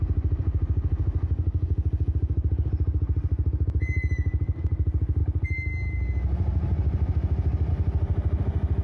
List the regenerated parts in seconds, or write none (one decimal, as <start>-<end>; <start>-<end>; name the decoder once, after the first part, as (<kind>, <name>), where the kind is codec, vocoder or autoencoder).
none